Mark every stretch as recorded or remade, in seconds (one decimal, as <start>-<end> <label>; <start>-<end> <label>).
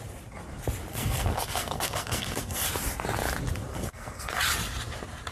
0.0-0.9 recorded; 0.9-2.7 remade; 2.7-3.7 recorded; 3.7-4.4 remade; 4.4-5.3 recorded